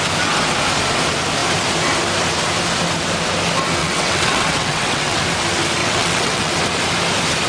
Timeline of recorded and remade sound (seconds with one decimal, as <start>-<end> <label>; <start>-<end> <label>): 0.0-3.8 recorded; 3.8-5.2 remade; 5.2-5.8 recorded; 5.8-6.5 remade; 6.5-7.5 recorded